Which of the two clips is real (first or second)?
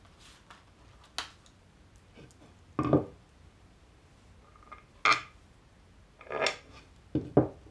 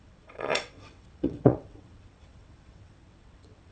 first